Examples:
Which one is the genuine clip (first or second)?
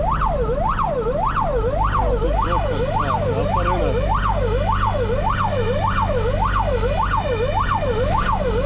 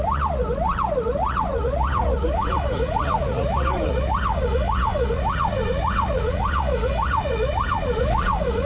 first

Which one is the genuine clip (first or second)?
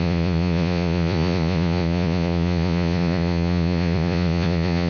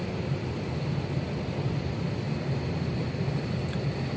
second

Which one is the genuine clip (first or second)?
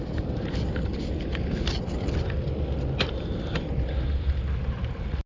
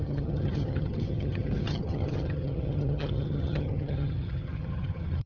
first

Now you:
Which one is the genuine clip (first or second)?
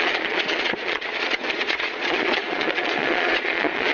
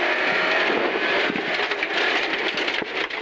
second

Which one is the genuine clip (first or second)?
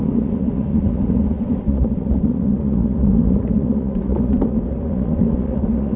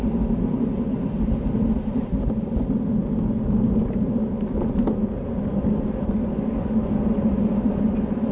second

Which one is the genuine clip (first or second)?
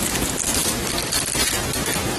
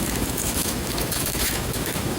first